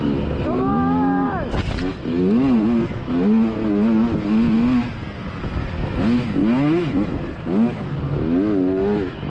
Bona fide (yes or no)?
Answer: yes